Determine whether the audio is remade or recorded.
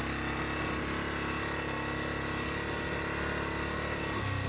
recorded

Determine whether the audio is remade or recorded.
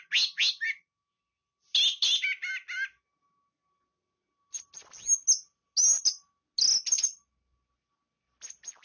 recorded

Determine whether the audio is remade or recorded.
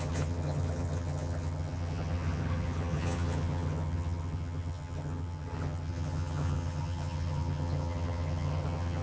remade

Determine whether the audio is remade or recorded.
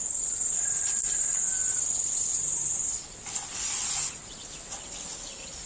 recorded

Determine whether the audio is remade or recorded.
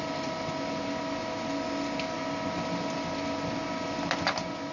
recorded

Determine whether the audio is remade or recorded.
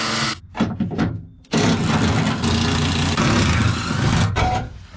recorded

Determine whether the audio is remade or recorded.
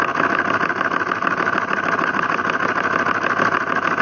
recorded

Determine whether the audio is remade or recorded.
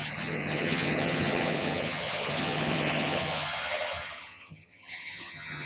remade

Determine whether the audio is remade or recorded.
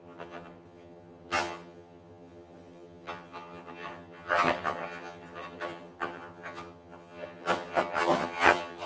remade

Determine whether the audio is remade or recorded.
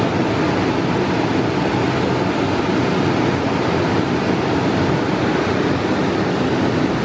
recorded